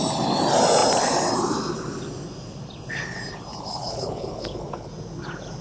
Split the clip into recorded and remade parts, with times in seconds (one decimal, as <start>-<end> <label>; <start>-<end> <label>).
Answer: 0.0-3.5 recorded; 3.5-4.9 remade; 4.9-5.6 recorded